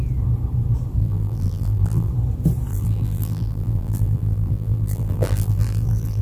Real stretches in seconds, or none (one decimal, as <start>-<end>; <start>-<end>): 0.0-1.0; 2.1-2.7